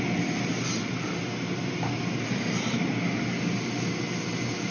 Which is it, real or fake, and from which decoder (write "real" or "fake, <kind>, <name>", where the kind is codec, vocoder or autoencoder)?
real